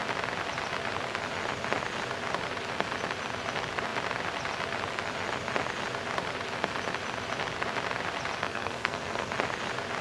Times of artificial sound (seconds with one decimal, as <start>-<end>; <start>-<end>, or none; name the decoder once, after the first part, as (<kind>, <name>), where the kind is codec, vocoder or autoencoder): 8.4-9.3 (codec, SNAC)